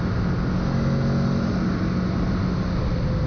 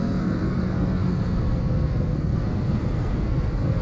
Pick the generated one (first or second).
second